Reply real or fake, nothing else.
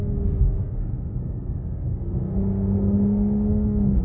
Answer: fake